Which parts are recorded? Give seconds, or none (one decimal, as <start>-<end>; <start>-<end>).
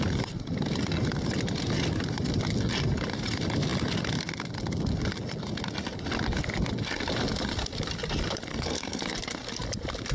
0.0-8.5; 9.0-10.1